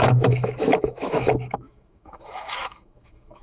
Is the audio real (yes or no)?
no